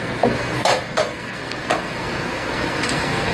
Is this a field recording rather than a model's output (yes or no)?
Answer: no